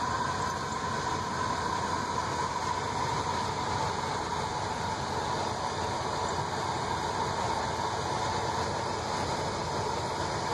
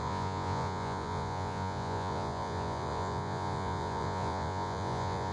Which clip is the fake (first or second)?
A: second